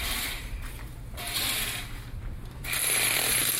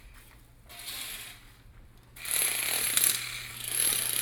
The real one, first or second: second